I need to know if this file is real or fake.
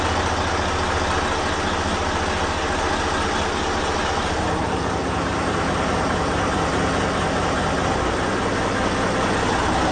real